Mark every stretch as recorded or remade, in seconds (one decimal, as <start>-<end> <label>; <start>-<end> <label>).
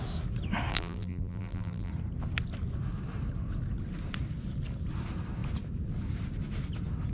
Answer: 0.0-0.7 recorded; 0.7-1.9 remade; 1.9-7.1 recorded